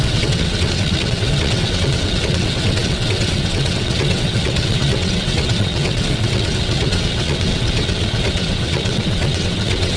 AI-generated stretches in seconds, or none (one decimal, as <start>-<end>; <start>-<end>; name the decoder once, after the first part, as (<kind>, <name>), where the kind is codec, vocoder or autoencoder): 0.0-10.0 (vocoder, WaveNeXt)